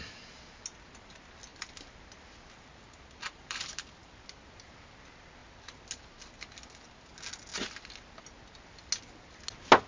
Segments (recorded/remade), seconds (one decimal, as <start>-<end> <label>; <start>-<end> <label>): 0.0-3.2 recorded; 3.2-3.9 remade; 3.9-9.9 recorded